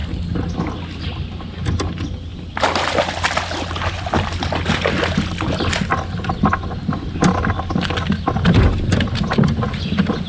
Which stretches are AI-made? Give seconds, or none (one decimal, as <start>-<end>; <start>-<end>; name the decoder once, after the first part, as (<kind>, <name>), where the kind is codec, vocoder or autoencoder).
none